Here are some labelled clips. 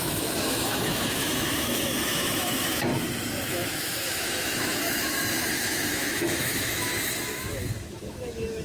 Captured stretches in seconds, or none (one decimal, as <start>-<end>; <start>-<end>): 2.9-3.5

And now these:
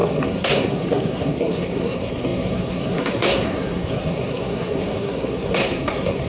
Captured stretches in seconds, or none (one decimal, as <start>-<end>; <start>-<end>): none

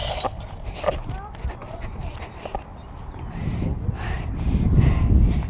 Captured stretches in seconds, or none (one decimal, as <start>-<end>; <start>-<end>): 1.1-1.6; 2.1-2.7; 4.8-5.5

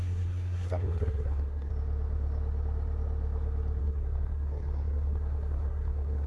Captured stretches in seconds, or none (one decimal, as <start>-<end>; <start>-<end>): 1.7-3.8

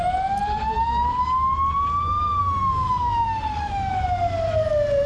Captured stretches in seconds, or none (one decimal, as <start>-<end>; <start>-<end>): 0.0-2.4; 3.9-5.1